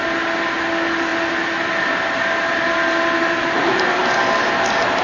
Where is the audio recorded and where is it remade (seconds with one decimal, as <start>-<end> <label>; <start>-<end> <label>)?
0.0-5.0 recorded